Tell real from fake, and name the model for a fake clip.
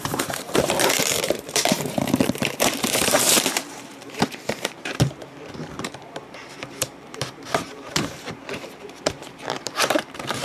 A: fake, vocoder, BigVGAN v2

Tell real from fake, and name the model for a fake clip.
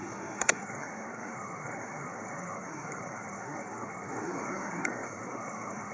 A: fake, codec, SNAC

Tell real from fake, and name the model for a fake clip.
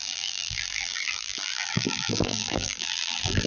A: fake, vocoder, BigVGAN v2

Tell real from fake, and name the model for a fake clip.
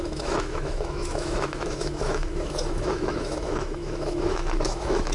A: fake, autoencoder, DAC-VAE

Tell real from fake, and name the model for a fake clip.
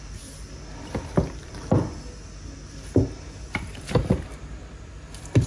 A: fake, vocoder, BigVGAN v2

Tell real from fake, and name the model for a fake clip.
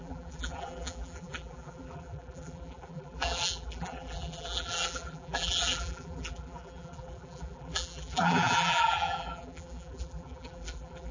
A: fake, vocoder, BigVGAN v2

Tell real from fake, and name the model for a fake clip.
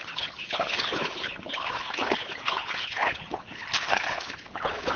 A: fake, codec, HILCodec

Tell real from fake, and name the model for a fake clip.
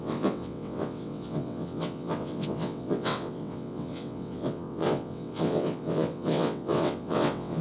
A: fake, vocoder, WaveNeXt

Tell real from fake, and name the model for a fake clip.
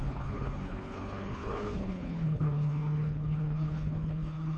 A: fake, codec, HILCodec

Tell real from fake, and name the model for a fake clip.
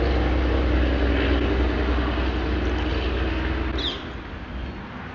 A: real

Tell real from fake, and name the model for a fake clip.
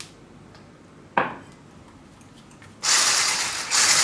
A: real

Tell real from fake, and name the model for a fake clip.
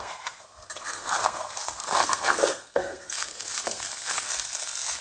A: fake, codec, SNAC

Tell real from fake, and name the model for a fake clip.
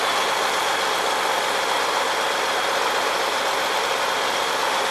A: real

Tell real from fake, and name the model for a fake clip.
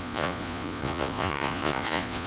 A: fake, vocoder, Vocos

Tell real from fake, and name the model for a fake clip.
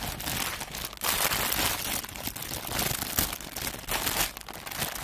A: real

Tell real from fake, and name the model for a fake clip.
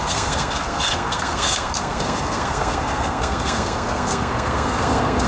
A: fake, codec, SNAC